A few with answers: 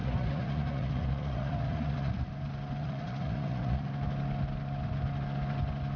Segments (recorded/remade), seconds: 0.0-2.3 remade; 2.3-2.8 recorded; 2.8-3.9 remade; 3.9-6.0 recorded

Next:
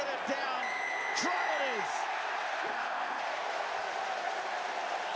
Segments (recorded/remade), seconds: 0.0-2.7 recorded; 2.7-3.2 remade; 3.2-5.2 recorded

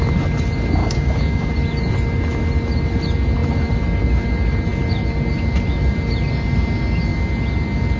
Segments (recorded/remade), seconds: 0.0-0.8 recorded; 0.8-1.5 remade; 1.5-8.0 recorded